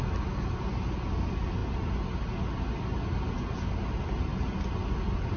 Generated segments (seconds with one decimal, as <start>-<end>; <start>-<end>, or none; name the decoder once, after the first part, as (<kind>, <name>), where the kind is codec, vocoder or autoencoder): none